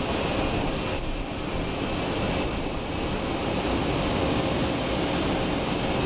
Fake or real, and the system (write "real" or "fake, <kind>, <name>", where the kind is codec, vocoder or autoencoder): real